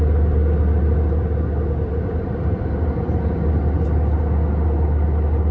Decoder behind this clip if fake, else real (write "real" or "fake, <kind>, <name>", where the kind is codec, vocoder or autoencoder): real